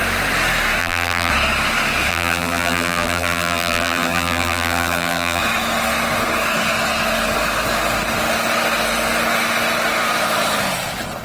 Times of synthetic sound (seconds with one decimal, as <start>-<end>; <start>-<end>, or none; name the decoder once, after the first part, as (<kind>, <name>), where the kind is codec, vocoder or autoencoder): 0.8-1.3 (vocoder, BigVGAN v2); 2.1-5.4